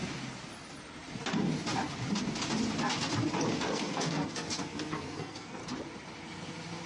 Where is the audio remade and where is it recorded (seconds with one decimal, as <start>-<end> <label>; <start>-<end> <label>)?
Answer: 0.0-3.6 recorded; 3.6-5.6 remade; 5.6-6.9 recorded